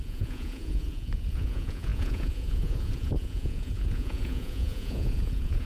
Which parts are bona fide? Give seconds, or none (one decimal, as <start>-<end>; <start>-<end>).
none